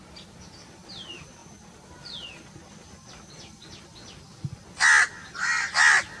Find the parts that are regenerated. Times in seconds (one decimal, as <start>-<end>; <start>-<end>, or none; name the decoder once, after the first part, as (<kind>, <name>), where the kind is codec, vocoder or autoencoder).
none